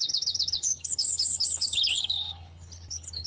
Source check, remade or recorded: remade